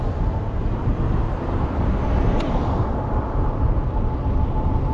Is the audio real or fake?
real